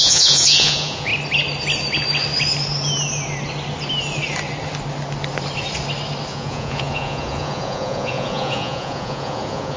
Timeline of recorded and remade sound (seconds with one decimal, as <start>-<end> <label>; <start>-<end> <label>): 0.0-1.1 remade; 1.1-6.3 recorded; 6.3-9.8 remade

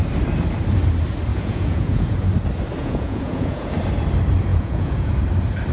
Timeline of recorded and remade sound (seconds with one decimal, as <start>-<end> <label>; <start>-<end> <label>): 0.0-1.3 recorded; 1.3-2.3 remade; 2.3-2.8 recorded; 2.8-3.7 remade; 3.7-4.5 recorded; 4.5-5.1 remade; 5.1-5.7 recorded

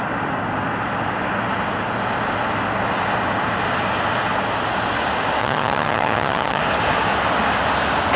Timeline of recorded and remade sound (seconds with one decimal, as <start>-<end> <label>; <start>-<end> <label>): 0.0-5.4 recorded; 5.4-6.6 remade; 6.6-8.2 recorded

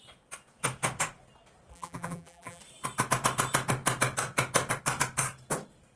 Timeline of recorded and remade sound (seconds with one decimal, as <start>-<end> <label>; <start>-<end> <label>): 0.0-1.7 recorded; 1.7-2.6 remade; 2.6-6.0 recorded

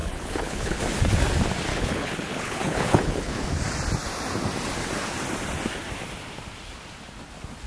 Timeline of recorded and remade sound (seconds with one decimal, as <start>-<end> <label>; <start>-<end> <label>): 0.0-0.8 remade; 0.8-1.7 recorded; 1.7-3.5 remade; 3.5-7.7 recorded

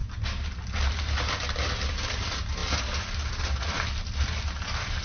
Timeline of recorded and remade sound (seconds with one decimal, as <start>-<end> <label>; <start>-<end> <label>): 0.0-5.0 recorded